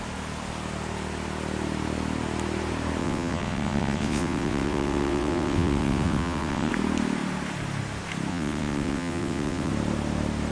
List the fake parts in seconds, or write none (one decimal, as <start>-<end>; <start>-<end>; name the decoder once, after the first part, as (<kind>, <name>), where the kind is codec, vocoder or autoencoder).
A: 3.0-6.7 (vocoder, WaveNeXt); 8.3-9.7